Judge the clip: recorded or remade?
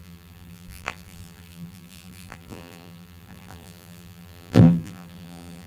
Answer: remade